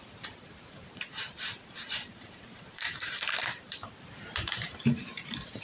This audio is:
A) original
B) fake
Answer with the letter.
B